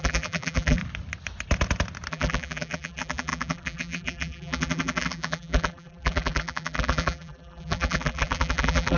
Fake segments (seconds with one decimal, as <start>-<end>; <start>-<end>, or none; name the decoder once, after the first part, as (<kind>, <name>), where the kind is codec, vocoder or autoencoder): 0.0-0.8 (vocoder, BigVGAN v2); 2.1-9.0